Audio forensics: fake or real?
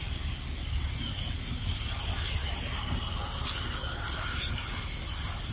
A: real